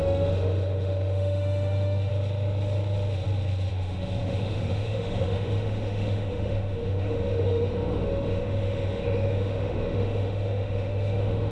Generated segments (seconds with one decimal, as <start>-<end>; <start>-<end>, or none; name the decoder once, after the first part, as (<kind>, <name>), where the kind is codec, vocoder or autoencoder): 0.0-2.1 (autoencoder, DAC-VAE); 3.7-11.5